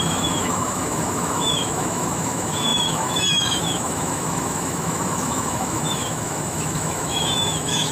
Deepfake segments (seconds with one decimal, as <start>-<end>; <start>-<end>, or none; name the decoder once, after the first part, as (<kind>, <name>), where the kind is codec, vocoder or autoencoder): 0.0-7.9 (autoencoder, DAC-VAE)